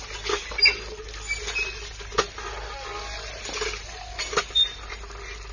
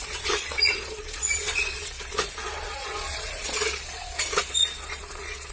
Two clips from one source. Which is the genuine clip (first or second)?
first